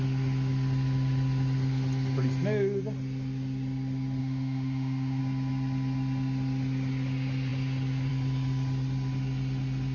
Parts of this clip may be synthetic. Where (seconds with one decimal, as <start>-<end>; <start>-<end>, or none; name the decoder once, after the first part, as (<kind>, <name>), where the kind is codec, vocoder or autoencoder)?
4.2-5.2 (autoencoder, DAC-VAE)